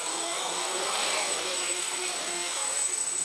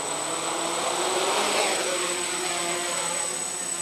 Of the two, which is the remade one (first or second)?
first